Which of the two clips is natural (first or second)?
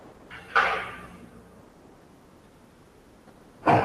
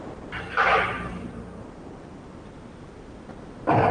first